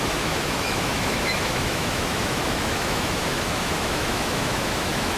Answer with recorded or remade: remade